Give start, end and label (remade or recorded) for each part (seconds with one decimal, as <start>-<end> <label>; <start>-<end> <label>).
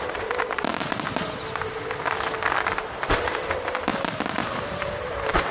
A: 0.0-0.7 remade; 0.7-2.8 recorded; 2.8-3.9 remade; 3.9-4.4 recorded; 4.4-5.5 remade